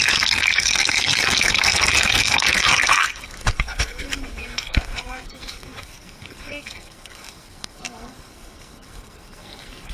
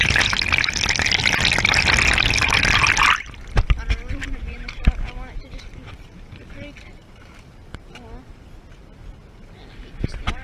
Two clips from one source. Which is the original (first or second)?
second